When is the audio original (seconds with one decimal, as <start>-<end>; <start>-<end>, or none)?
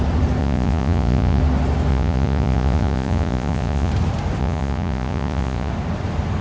0.0-0.4; 1.4-1.9; 3.9-4.4; 5.7-6.4